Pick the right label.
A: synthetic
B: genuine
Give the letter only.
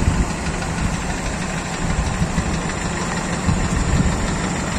B